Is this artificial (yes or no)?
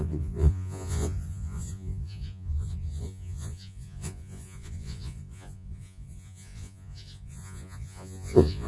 yes